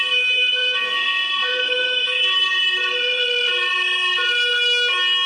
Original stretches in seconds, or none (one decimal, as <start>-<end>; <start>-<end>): 2.2-5.3